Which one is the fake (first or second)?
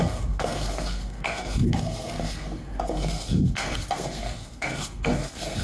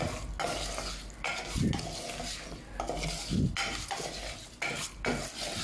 first